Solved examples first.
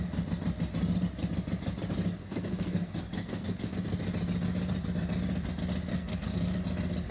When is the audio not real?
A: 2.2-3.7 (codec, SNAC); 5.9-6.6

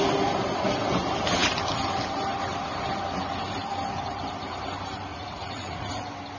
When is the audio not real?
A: 5.1-5.9 (vocoder, Vocos)

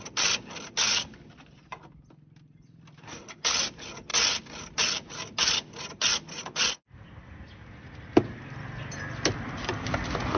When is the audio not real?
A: none

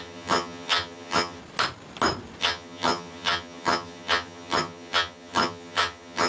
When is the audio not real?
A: 0.0-1.4 (vocoder, HiFi-GAN); 2.4-6.3